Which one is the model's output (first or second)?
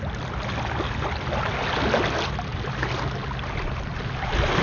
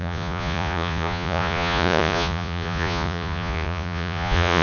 second